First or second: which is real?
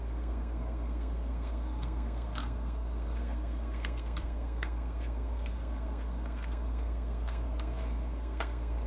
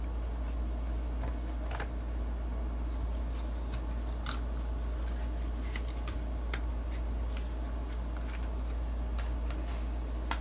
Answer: second